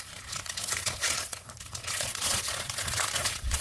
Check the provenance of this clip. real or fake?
fake